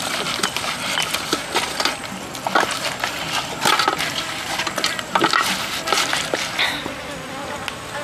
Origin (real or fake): real